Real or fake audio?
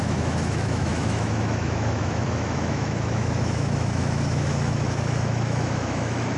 fake